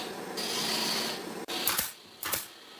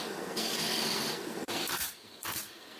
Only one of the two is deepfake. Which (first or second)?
second